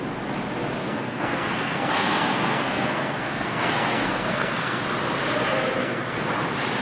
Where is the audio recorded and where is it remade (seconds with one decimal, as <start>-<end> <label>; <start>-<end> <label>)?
0.0-0.8 recorded; 0.8-4.8 remade; 4.8-5.8 recorded; 5.8-6.3 remade; 6.3-6.8 recorded